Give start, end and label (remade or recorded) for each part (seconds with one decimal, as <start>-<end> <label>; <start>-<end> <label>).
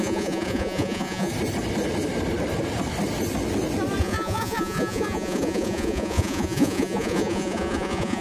0.0-1.3 remade; 1.3-4.0 recorded; 4.0-8.2 remade